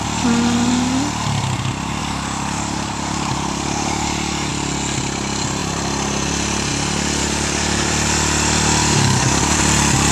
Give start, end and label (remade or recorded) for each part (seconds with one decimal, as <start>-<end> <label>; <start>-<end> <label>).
0.0-2.0 recorded; 2.0-4.5 remade; 4.5-7.2 recorded; 7.2-7.9 remade; 7.9-8.8 recorded; 8.8-9.6 remade; 9.6-10.1 recorded